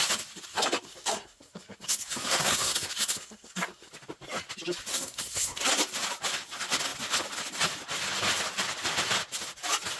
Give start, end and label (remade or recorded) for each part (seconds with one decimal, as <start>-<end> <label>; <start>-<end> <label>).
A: 0.0-0.5 recorded; 0.5-3.9 remade; 3.9-4.9 recorded; 4.9-5.7 remade; 5.7-10.0 recorded